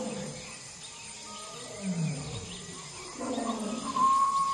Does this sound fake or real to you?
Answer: real